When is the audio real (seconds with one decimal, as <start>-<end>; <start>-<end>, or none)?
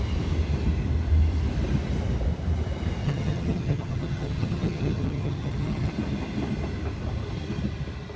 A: 0.0-3.0; 5.9-8.2